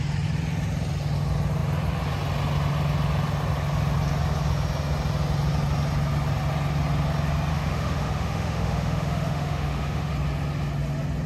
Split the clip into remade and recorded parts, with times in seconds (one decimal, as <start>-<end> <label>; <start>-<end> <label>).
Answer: 0.0-7.5 recorded; 7.5-10.1 remade; 10.1-11.3 recorded